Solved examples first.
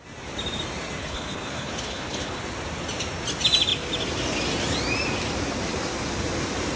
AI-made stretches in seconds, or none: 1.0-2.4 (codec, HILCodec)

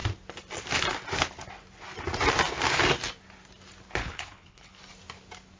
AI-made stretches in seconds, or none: 4.0-4.8 (codec, HILCodec)

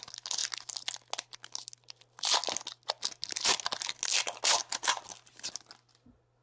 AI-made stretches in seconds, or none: none

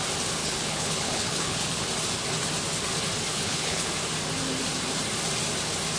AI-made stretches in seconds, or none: 0.4-1.8 (codec, HILCodec); 3.3-3.9

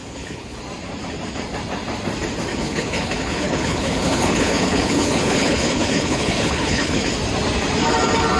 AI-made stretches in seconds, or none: 0.0-0.6 (codec, HILCodec); 2.5-7.1